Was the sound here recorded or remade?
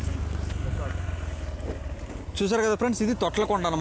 recorded